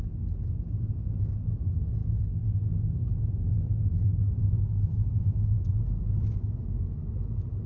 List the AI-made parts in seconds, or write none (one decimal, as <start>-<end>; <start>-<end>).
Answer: 3.8-5.7